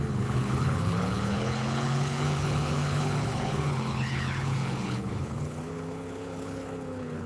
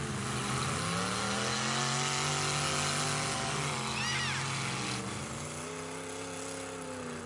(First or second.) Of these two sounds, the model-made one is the first